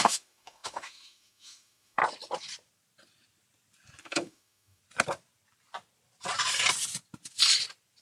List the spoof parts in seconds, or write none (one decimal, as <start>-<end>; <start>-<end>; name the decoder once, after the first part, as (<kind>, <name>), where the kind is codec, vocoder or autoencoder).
0.0-2.0 (autoencoder, DAC-VAE); 4.0-4.8